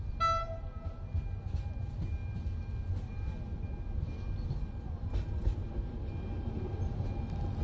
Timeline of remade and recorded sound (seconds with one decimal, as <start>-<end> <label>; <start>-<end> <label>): 0.0-7.6 recorded